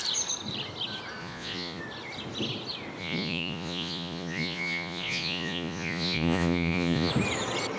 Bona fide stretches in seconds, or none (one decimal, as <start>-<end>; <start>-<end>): 0.0-1.2; 1.8-3.0; 7.1-7.8